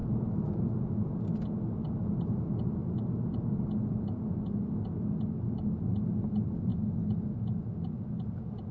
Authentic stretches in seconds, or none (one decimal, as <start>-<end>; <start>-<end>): 0.0-8.7